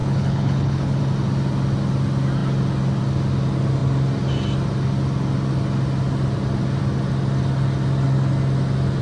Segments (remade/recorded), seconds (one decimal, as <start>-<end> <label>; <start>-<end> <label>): 0.0-1.0 remade; 1.0-9.0 recorded